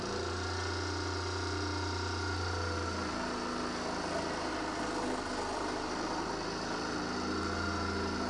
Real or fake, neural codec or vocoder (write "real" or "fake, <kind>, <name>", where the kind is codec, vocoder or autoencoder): real